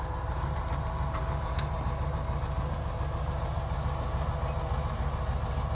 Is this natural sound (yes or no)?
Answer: yes